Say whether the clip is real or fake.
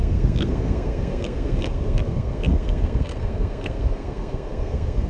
fake